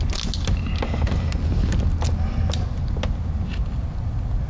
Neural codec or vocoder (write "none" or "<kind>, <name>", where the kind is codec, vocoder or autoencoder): none